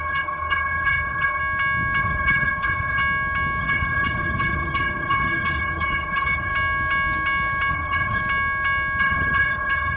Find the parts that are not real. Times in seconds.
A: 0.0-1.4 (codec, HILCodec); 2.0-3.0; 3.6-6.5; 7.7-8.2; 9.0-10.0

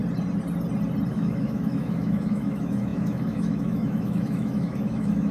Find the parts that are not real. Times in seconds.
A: 1.1-5.3 (autoencoder, DAC-VAE)

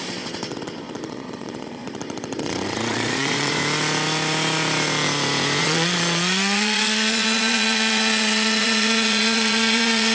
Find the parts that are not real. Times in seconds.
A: 0.0-3.6 (vocoder, Vocos); 5.6-10.1